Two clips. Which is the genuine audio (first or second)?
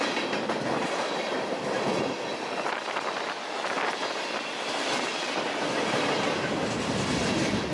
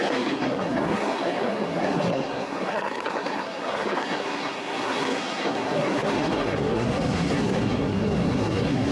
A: first